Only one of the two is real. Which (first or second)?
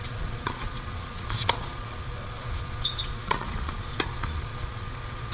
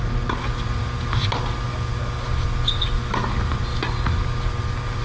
second